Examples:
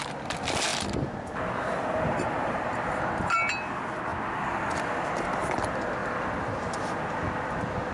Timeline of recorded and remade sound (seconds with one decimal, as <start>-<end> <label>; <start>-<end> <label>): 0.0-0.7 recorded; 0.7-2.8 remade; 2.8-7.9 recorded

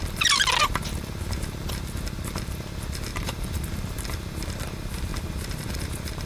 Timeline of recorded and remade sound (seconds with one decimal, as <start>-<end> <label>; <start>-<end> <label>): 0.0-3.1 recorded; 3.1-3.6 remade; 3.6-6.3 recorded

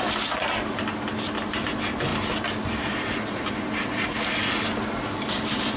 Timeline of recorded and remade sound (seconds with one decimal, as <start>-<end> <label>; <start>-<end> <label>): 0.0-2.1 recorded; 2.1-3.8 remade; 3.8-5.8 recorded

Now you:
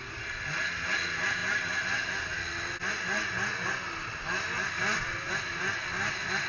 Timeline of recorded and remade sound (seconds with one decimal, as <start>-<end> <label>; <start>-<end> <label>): 0.0-6.5 recorded

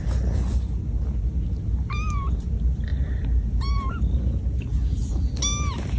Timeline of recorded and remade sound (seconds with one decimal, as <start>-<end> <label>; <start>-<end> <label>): 0.0-6.0 recorded

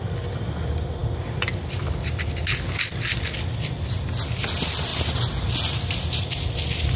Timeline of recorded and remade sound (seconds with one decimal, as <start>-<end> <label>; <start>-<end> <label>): 0.0-7.0 recorded

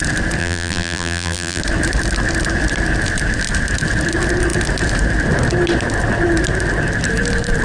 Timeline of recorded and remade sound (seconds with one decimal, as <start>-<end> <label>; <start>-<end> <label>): 0.0-0.4 recorded; 0.4-1.6 remade; 1.6-7.6 recorded

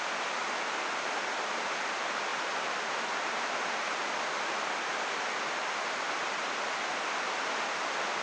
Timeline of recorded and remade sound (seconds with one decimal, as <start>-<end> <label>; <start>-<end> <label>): 0.0-8.2 recorded